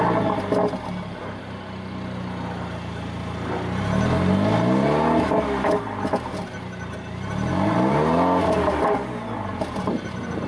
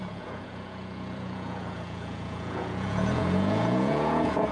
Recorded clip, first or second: first